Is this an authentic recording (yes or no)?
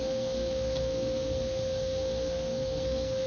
no